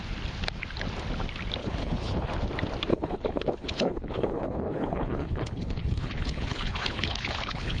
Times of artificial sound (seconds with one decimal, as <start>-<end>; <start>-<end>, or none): 1.6-2.3; 2.9-7.8